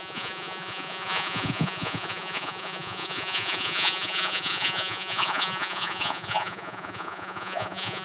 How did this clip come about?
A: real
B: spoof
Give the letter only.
B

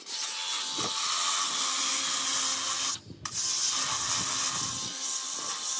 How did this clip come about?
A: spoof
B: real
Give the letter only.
B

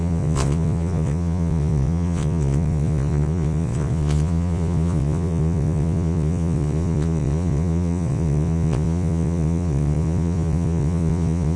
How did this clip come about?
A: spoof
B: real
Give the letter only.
A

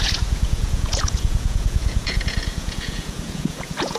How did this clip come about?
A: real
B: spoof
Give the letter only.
B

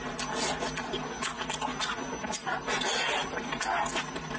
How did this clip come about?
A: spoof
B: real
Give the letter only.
B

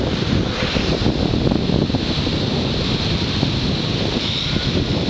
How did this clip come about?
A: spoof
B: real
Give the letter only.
B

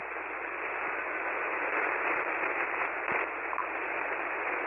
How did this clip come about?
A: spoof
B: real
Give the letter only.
B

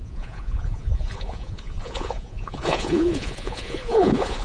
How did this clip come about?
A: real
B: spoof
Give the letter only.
B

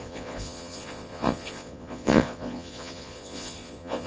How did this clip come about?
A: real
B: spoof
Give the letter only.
B